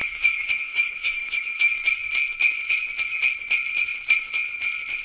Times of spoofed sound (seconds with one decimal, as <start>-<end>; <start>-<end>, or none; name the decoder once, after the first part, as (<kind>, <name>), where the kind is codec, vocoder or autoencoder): 0.0-1.7 (autoencoder, DAC-VAE)